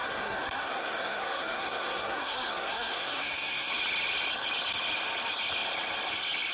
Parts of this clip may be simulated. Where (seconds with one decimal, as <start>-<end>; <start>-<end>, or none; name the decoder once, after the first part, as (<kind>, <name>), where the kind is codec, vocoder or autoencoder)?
0.0-3.7 (codec, SNAC)

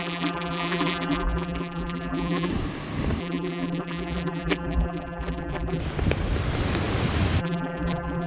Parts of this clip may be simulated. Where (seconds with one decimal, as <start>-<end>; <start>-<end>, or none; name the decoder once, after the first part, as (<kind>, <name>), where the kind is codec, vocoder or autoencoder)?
0.0-2.5 (vocoder, BigVGAN v2); 3.2-5.8; 7.4-8.3